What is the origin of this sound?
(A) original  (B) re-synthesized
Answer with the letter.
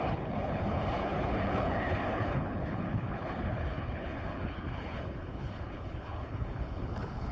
B